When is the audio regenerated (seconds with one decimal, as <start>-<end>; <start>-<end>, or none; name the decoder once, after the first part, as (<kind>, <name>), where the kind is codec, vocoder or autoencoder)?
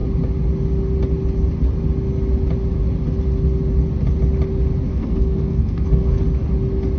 4.9-6.2 (codec, SNAC)